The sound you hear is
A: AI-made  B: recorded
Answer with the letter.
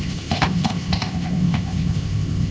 A